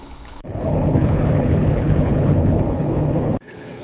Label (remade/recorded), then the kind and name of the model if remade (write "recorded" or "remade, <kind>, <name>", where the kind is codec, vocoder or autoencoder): remade, codec, HILCodec